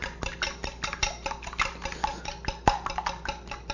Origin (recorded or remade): recorded